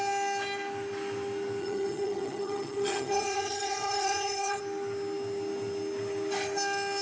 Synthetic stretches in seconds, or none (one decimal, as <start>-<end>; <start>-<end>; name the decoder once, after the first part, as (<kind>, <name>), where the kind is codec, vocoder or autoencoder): 1.6-4.6 (vocoder, HiFi-GAN)